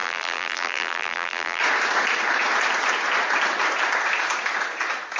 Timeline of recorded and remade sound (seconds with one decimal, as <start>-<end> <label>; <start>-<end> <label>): 0.0-1.6 remade; 1.6-5.2 recorded